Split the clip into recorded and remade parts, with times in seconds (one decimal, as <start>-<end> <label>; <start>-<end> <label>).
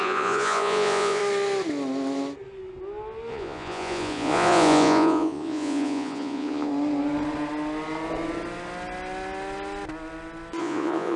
0.0-1.2 remade; 1.2-3.3 recorded; 3.3-6.7 remade; 6.7-10.6 recorded; 10.6-11.2 remade